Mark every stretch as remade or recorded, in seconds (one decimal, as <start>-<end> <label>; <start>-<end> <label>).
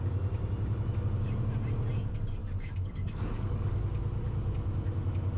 0.0-2.4 recorded; 2.4-3.8 remade; 3.8-5.4 recorded